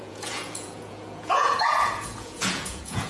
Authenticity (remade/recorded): remade